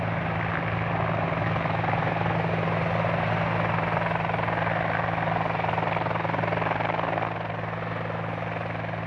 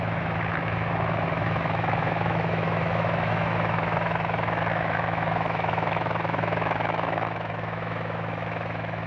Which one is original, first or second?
first